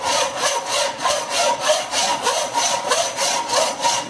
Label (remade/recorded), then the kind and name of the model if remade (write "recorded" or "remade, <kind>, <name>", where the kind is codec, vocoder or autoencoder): remade, vocoder, Vocos